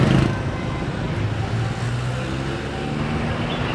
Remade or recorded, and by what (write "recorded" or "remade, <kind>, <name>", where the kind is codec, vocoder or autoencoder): recorded